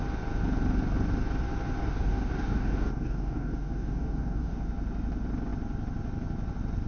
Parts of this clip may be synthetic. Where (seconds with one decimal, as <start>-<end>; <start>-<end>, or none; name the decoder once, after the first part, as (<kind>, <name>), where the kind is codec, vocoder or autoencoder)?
1.8-4.6 (codec, DAC)